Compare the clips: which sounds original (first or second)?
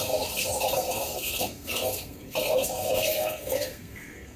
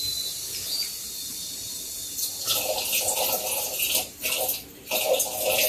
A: second